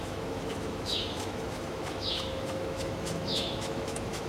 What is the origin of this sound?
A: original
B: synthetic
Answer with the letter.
B